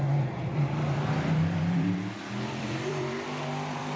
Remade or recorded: remade